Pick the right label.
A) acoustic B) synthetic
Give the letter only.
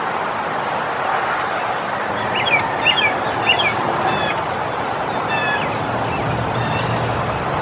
A